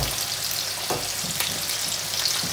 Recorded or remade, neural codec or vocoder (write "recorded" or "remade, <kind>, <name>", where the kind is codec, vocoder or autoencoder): recorded